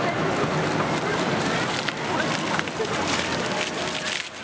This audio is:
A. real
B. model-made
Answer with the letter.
A